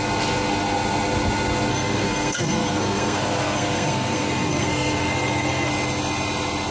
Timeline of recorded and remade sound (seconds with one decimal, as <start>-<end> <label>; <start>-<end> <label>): 0.0-1.7 recorded; 1.7-5.7 remade; 5.7-6.7 recorded